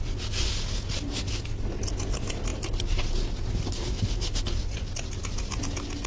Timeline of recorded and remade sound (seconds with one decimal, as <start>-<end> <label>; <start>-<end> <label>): 0.0-6.1 recorded